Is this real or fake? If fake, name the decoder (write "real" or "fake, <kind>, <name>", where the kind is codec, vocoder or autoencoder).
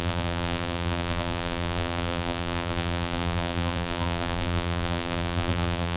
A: fake, vocoder, BigVGAN v2